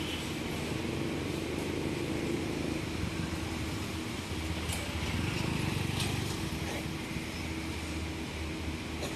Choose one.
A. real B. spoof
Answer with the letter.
A